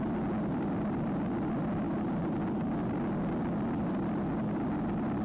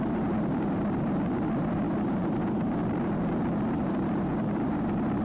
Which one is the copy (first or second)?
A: second